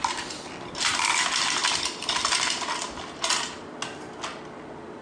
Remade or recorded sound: recorded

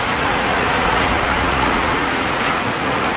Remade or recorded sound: remade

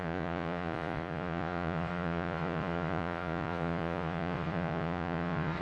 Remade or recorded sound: remade